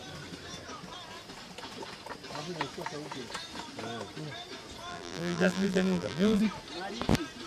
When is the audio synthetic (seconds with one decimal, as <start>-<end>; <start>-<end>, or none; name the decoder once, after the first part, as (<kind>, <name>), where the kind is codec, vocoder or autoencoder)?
4.9-6.4 (vocoder, BigVGAN v2)